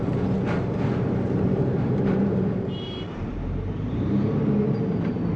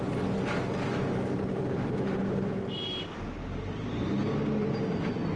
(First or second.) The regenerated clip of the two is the first